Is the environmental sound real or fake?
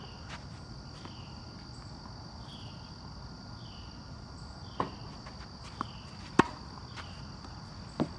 real